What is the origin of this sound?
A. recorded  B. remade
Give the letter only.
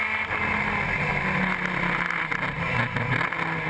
A